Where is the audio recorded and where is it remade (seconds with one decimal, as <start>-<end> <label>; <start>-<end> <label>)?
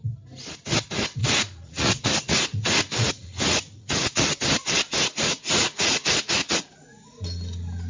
0.0-1.2 recorded; 1.2-4.4 remade; 4.4-5.3 recorded; 5.3-7.1 remade; 7.1-7.9 recorded